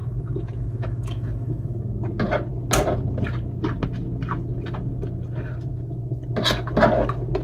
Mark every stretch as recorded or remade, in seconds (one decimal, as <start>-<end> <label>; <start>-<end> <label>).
0.0-1.8 remade; 1.8-7.4 recorded